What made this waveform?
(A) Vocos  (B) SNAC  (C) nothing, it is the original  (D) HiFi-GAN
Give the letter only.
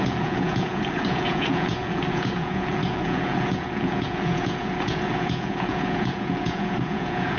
A